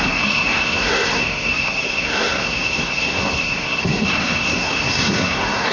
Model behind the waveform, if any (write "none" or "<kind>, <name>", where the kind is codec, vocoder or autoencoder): codec, SNAC